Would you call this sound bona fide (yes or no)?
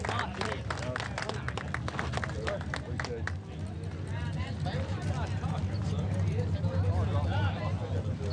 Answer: yes